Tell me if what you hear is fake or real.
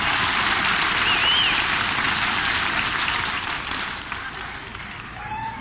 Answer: real